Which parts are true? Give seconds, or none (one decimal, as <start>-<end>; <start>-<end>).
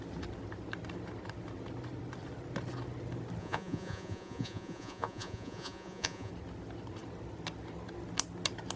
0.0-3.4; 6.3-8.8